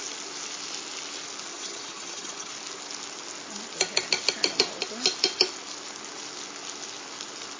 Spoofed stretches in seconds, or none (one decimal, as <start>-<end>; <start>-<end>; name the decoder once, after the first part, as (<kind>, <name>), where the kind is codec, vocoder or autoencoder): 1.5-2.5 (vocoder, HiFi-GAN)